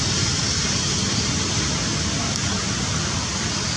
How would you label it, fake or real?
real